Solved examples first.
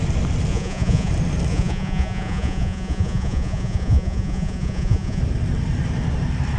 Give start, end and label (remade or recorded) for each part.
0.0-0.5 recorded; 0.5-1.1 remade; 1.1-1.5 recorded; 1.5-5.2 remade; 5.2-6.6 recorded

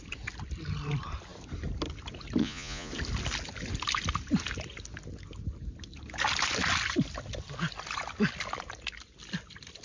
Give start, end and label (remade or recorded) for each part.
0.0-2.4 recorded; 2.4-2.9 remade; 2.9-9.8 recorded

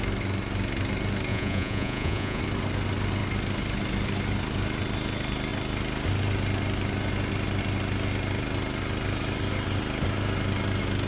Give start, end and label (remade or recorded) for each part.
0.0-1.3 recorded; 1.3-2.4 remade; 2.4-11.1 recorded

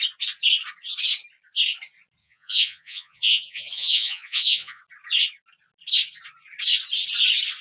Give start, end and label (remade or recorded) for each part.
0.0-2.2 recorded; 2.2-4.8 remade; 4.8-7.6 recorded